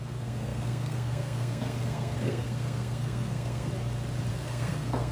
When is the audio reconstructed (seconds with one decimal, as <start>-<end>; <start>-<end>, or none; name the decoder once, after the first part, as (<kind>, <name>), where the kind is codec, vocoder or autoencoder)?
0.0-3.7 (codec, SNAC); 4.3-5.1